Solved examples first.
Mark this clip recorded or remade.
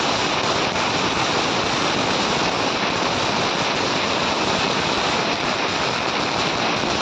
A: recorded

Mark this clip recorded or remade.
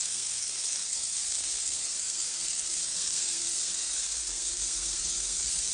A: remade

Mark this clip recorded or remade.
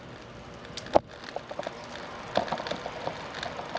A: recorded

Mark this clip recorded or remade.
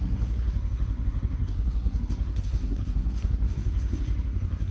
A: remade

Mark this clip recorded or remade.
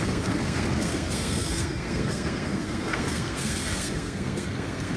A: remade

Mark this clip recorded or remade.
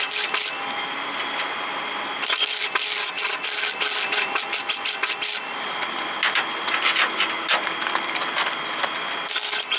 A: recorded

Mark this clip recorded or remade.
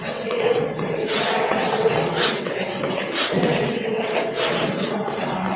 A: remade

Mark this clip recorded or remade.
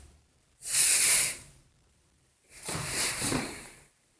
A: remade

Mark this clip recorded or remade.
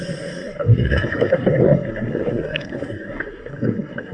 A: remade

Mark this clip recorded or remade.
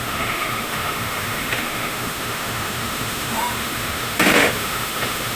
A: remade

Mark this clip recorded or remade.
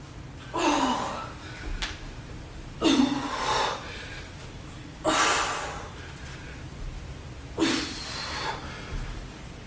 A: recorded